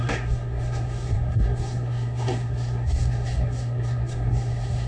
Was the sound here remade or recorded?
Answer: remade